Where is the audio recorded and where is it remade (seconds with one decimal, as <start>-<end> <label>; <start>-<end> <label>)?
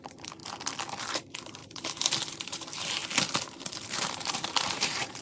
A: 0.0-0.4 remade; 0.4-1.0 recorded; 1.0-1.6 remade; 1.6-2.3 recorded; 2.3-3.0 remade; 3.0-3.9 recorded; 3.9-5.2 remade